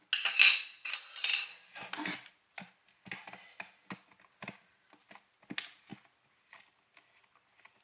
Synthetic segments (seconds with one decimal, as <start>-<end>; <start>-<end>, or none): none